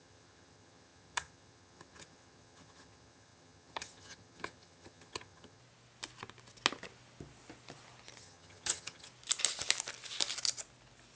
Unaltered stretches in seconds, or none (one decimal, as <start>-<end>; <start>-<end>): 5.6-8.2; 9.1-11.2